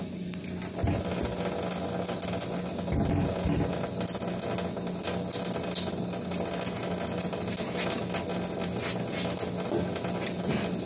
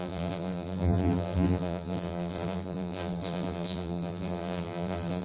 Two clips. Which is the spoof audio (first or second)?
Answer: second